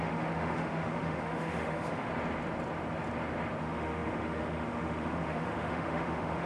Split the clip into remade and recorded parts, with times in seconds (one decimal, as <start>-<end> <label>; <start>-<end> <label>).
0.0-2.1 remade; 2.1-3.6 recorded; 3.6-6.5 remade